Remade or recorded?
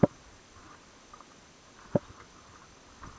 recorded